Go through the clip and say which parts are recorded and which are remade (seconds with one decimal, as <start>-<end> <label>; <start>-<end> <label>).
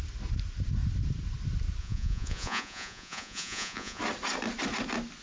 0.0-1.8 recorded; 1.8-4.0 remade; 4.0-5.2 recorded